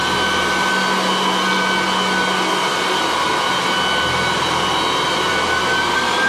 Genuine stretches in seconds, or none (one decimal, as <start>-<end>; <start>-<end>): 0.0-6.3